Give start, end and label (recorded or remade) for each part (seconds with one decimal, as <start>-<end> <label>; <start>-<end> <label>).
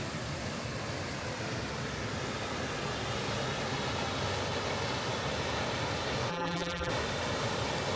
0.0-6.3 recorded; 6.3-6.9 remade; 6.9-8.0 recorded